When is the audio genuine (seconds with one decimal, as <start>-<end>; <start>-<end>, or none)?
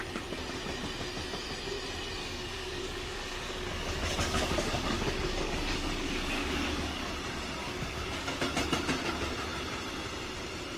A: 0.0-2.2; 7.1-7.6; 8.4-10.8